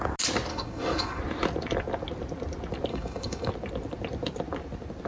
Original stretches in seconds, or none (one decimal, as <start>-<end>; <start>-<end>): 0.0-0.5; 1.2-2.9; 3.5-5.1